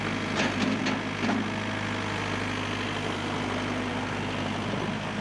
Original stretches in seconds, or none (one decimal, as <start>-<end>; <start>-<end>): 0.0-5.2